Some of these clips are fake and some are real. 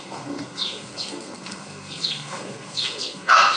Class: fake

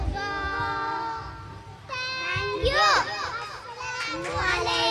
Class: real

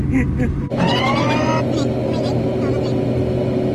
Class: real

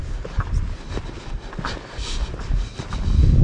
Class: real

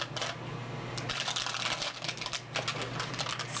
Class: real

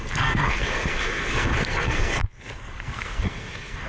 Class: fake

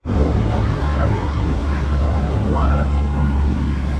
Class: fake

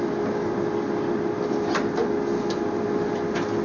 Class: real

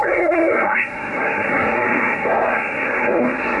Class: fake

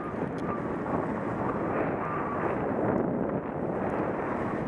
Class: real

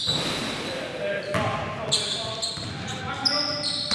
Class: real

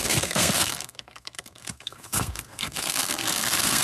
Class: fake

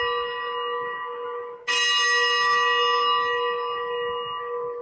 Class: real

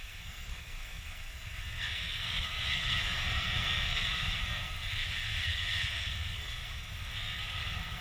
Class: fake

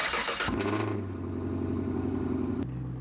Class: real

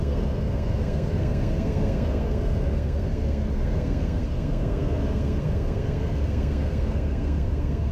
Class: fake